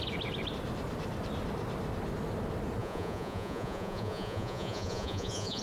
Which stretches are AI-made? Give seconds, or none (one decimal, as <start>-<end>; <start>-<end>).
2.8-5.6